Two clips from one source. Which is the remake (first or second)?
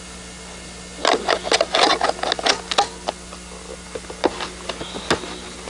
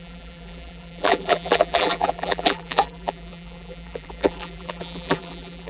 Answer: second